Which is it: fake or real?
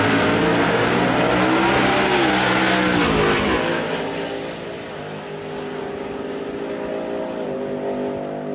real